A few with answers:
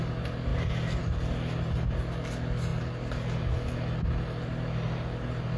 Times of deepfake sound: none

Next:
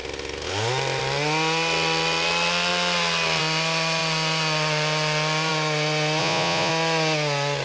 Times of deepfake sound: 6.2-6.7 (vocoder, Vocos)

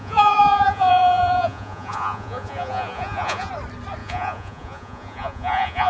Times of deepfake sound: 0.0-3.5 (vocoder, Vocos); 4.0-5.9

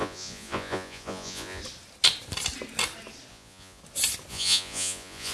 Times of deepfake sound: 0.0-1.6 (vocoder, Vocos); 3.3-3.8; 4.3-5.3